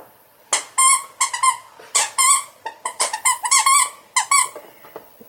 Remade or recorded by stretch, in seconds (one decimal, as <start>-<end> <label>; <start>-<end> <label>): 0.0-2.8 recorded; 2.8-3.6 remade; 3.6-5.3 recorded